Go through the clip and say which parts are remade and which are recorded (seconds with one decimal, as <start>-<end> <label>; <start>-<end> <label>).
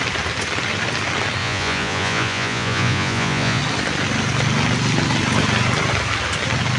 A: 0.0-1.4 recorded; 1.4-3.6 remade; 3.6-6.8 recorded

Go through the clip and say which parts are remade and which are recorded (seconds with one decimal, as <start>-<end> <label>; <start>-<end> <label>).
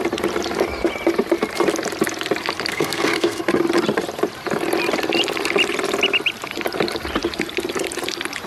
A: 0.0-2.7 recorded; 2.7-3.4 remade; 3.4-8.5 recorded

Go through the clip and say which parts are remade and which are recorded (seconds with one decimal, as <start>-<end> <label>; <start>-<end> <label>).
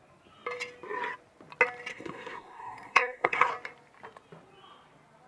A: 0.0-1.9 recorded; 1.9-3.5 remade; 3.5-5.3 recorded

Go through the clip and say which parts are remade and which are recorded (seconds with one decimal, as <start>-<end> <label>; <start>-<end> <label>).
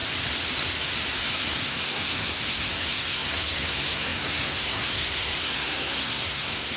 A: 0.0-1.2 recorded; 1.2-6.8 remade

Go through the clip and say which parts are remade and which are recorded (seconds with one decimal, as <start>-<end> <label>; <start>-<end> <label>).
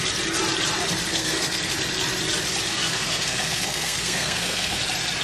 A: 0.0-1.1 recorded; 1.1-1.6 remade; 1.6-2.7 recorded; 2.7-4.8 remade; 4.8-5.2 recorded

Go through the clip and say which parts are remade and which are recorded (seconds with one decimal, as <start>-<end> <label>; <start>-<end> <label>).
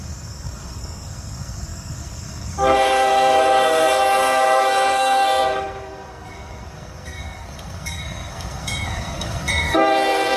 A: 0.0-10.4 remade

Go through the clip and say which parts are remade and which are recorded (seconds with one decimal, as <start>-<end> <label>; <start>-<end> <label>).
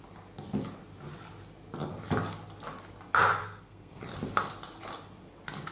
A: 0.0-3.4 recorded; 3.4-4.0 remade; 4.0-5.7 recorded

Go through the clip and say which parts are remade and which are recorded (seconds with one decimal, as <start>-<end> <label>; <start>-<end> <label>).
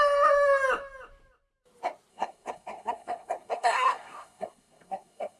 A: 0.0-2.1 recorded; 2.1-5.4 remade